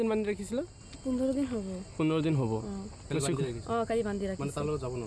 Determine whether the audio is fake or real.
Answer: real